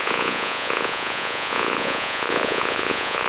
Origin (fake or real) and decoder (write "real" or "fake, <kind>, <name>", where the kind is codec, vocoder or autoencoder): fake, vocoder, Vocos